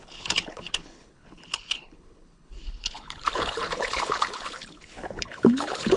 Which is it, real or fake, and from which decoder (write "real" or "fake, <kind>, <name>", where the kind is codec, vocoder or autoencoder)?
fake, codec, HILCodec